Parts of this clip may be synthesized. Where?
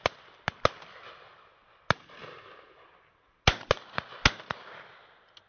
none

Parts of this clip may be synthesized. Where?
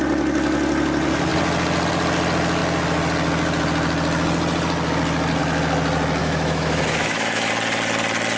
6.2-7.5 (autoencoder, DAC-VAE)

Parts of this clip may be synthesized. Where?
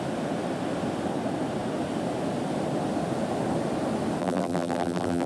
4.2-5.3 (vocoder, BigVGAN v2)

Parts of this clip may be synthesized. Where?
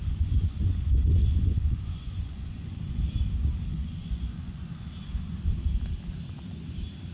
0.0-3.0 (vocoder, Vocos); 3.7-4.9